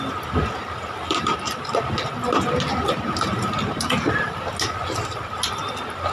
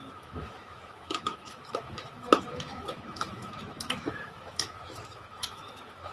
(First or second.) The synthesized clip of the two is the second